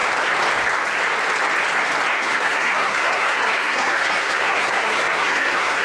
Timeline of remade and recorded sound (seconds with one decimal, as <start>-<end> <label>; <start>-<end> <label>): 0.0-2.1 recorded; 2.1-5.8 remade

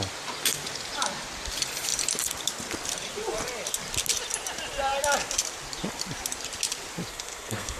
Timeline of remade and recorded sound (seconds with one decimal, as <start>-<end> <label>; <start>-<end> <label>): 0.0-7.1 recorded; 7.1-7.8 remade

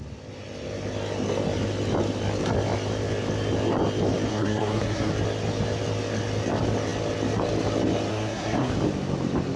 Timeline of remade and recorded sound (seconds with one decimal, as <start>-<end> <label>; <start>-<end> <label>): 0.0-4.3 recorded; 4.3-5.1 remade; 5.1-8.1 recorded; 8.1-8.7 remade; 8.7-9.6 recorded

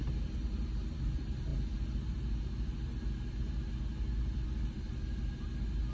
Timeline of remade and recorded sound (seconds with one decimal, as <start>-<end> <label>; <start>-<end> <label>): 0.0-5.9 recorded